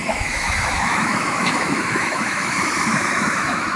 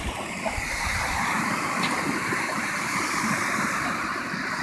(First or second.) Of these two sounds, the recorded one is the second